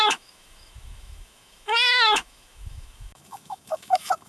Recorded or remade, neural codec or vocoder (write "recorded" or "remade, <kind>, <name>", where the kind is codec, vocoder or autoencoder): remade, autoencoder, DAC-VAE